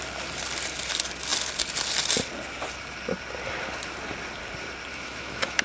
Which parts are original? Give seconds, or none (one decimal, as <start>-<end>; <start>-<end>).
0.0-4.9

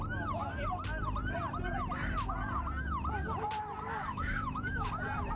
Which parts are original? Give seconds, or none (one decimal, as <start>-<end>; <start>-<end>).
0.0-4.1; 4.9-5.4

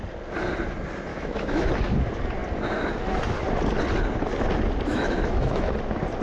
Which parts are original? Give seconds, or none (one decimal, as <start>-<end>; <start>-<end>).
0.0-1.1; 1.7-4.9; 5.7-6.2

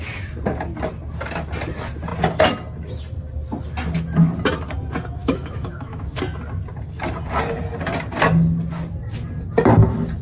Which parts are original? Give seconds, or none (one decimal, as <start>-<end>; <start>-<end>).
0.0-5.2; 6.2-10.2

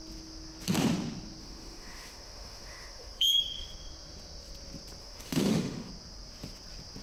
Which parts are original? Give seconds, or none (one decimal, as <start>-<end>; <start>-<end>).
0.0-1.4; 3.4-5.0; 5.9-7.0